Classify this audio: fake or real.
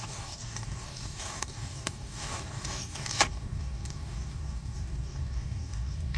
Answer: fake